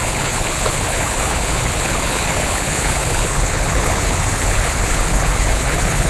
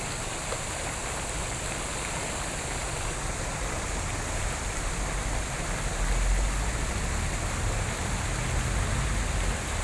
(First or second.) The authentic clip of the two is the second